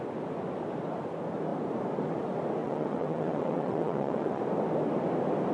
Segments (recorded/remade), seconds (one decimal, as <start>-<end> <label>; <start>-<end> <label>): 0.0-2.6 recorded; 2.6-4.4 remade; 4.4-5.5 recorded